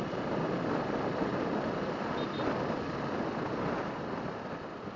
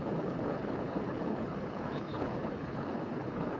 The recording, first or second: first